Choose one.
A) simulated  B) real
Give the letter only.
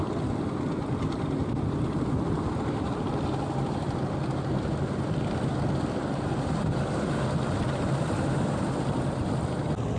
B